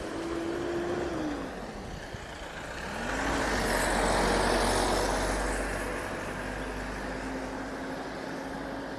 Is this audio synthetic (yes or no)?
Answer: no